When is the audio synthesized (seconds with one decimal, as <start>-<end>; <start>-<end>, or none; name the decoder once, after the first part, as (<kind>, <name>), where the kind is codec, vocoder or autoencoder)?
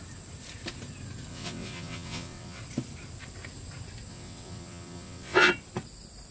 1.3-2.6 (vocoder, WaveNeXt); 4.1-5.5